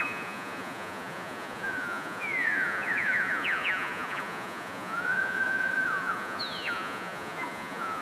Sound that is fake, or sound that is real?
fake